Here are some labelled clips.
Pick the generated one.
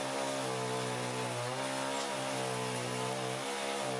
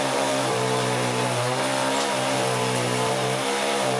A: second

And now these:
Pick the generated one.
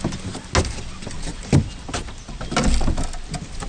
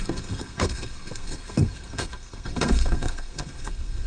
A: second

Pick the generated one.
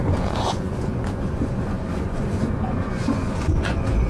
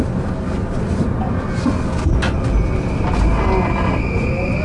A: first